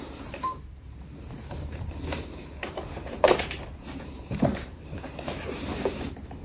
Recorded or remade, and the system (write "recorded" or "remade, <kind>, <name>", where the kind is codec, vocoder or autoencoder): remade, vocoder, BigVGAN v2